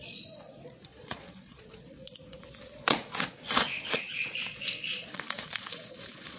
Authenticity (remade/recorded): remade